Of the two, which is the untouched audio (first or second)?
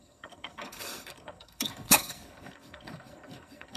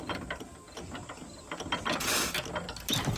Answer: second